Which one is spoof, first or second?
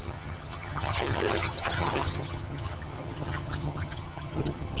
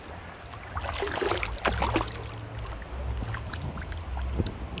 first